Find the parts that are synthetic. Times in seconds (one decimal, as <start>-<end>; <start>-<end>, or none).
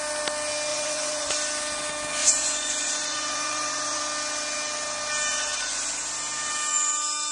0.7-1.3; 2.2-4.0; 5.3-5.9